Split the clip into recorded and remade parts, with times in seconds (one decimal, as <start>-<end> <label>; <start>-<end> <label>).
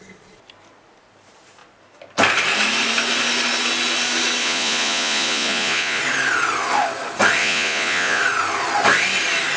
0.0-4.4 recorded; 4.4-6.0 remade; 6.0-7.4 recorded; 7.4-8.2 remade; 8.2-9.6 recorded